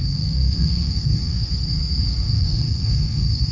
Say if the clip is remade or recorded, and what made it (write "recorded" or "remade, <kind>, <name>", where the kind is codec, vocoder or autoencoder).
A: remade, codec, SNAC